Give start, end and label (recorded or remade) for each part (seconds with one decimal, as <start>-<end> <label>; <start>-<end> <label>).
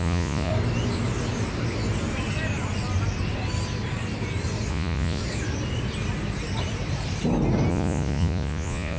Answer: 0.0-0.5 remade; 0.5-4.7 recorded; 4.7-5.2 remade; 5.2-7.7 recorded; 7.7-9.0 remade